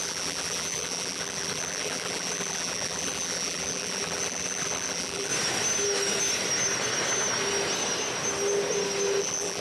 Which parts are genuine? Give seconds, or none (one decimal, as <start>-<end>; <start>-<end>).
5.3-9.2